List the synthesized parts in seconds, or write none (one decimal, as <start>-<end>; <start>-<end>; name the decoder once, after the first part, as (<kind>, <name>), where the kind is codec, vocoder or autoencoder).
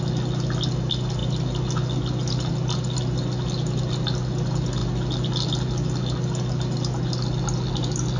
none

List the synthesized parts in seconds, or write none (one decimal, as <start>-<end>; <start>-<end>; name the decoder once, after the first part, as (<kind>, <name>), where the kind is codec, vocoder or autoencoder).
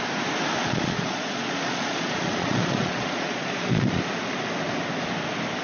0.6-4.0 (vocoder, Vocos)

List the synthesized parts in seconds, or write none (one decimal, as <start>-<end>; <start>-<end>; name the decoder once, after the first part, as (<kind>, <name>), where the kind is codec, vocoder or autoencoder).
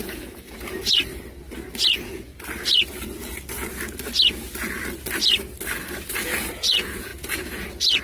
0.0-0.8 (vocoder, Vocos); 1.9-2.3; 5.8-8.0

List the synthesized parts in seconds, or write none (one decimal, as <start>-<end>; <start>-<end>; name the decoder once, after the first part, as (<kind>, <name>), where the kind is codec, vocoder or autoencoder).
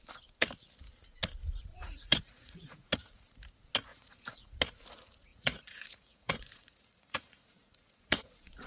1.7-3.1 (vocoder, Vocos); 3.9-4.6; 5.3-8.7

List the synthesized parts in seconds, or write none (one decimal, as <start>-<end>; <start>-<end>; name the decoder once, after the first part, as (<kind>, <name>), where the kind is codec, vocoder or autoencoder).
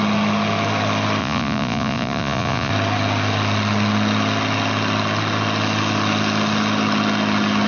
1.2-2.7 (vocoder, Vocos)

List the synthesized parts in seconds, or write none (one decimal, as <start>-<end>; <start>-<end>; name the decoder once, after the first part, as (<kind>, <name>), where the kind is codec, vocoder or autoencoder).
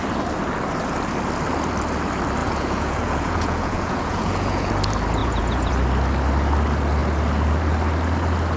2.4-4.7 (vocoder, Vocos); 5.2-5.7